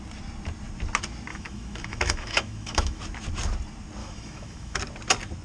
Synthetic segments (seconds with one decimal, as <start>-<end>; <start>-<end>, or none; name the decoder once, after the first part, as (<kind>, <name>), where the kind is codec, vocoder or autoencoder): 1.3-3.0 (autoencoder, DAC-VAE); 4.0-4.8